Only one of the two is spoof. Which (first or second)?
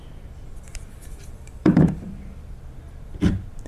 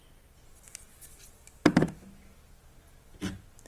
first